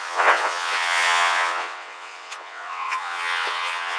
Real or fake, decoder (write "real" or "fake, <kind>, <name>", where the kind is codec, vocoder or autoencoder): fake, vocoder, WaveNeXt